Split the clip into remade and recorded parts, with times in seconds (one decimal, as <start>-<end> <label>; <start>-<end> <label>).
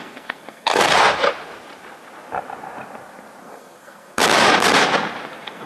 0.0-0.9 remade; 0.9-3.4 recorded; 3.4-4.2 remade; 4.2-5.3 recorded; 5.3-5.7 remade